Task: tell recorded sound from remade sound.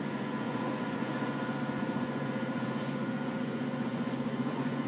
remade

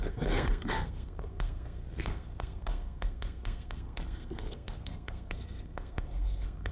remade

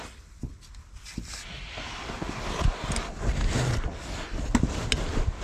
recorded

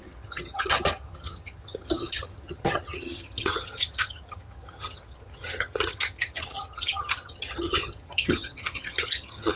remade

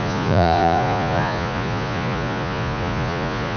remade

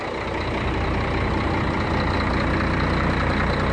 recorded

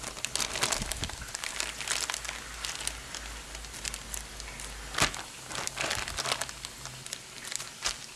recorded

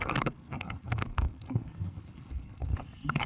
remade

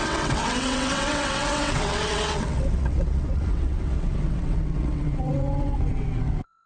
remade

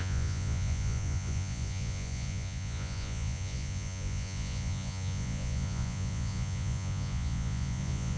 remade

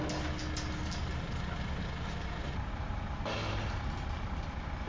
recorded